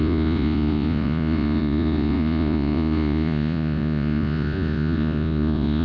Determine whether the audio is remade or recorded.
remade